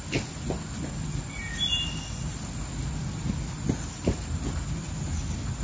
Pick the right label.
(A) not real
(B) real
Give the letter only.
B